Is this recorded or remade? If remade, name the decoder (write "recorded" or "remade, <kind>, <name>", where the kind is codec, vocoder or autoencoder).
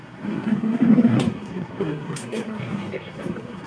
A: remade, codec, SNAC